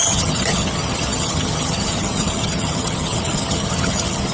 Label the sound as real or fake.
fake